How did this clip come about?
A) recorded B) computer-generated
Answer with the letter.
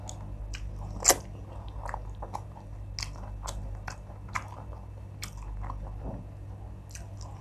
A